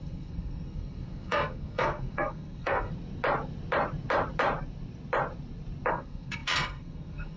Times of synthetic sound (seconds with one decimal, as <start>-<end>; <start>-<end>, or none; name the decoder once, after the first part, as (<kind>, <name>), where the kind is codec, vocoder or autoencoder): 0.0-2.9 (codec, SNAC); 5.9-7.4